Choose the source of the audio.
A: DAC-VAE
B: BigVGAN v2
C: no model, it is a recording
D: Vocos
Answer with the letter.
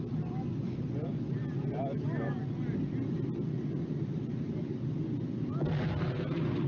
C